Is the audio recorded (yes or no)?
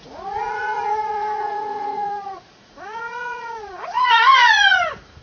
no